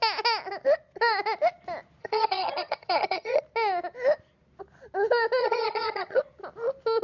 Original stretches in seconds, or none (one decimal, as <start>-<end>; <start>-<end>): 0.0-2.0; 3.4-5.4; 6.2-7.0